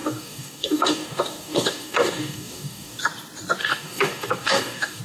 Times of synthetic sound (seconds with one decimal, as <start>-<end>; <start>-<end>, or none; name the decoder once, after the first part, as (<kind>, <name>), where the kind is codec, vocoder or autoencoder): 0.0-3.0 (codec, DAC); 3.6-5.0